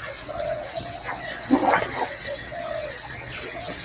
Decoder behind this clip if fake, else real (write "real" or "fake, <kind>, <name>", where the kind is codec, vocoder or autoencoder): fake, vocoder, WaveNeXt